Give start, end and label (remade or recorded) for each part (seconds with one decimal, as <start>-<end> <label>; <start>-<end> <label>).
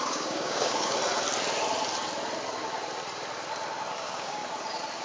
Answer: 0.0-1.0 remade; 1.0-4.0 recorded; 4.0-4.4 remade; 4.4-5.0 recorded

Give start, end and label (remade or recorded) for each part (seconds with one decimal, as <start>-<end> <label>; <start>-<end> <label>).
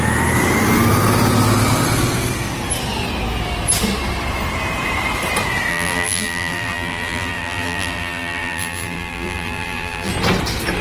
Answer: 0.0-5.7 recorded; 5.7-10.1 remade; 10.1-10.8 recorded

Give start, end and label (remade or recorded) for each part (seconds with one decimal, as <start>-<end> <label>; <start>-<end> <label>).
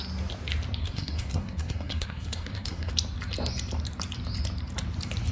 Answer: 0.0-0.8 recorded; 0.8-2.9 remade; 2.9-5.3 recorded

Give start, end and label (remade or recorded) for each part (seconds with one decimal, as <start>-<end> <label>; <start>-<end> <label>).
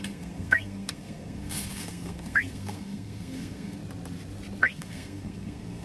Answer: 0.0-3.8 remade; 3.8-4.6 recorded; 4.6-5.8 remade